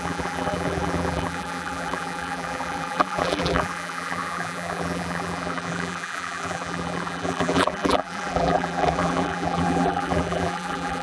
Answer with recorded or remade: remade